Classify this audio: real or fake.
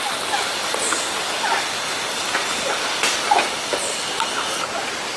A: real